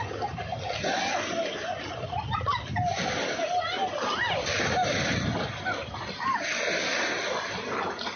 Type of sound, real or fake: real